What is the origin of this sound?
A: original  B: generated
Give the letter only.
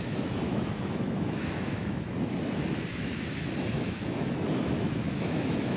B